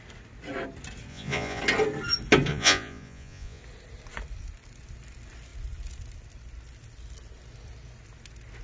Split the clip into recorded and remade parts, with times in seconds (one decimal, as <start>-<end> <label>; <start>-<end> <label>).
0.0-1.1 recorded; 1.1-1.6 remade; 1.6-2.5 recorded; 2.5-3.6 remade; 3.6-8.6 recorded